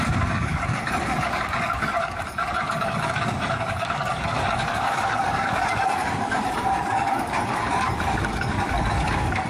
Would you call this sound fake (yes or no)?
yes